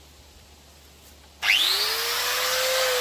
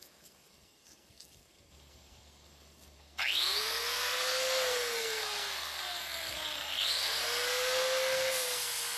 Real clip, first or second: first